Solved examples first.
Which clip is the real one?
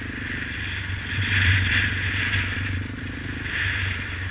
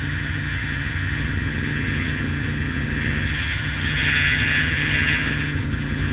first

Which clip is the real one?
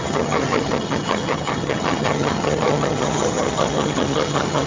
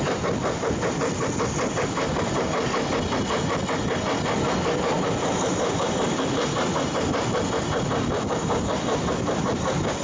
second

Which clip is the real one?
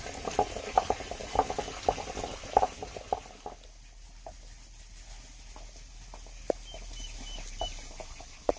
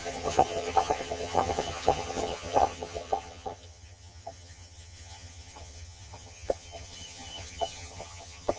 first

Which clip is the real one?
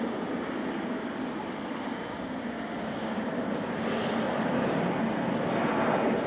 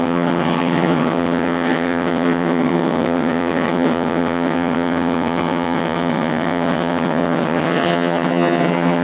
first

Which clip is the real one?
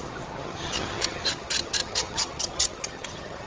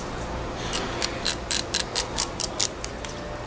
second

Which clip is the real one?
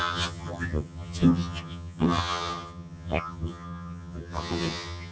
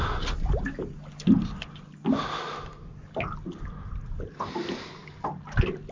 second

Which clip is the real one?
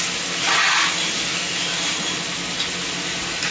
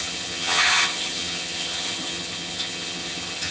first